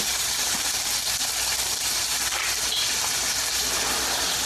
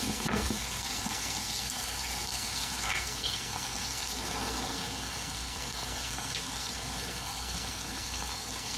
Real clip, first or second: first